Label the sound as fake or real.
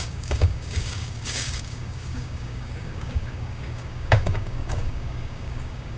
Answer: fake